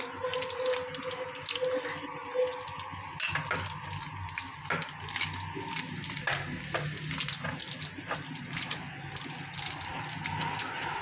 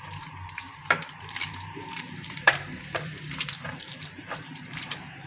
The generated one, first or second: second